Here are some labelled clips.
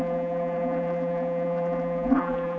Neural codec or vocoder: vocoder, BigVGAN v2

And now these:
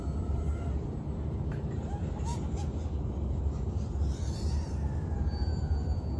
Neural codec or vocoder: none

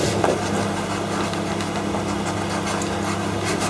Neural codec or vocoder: none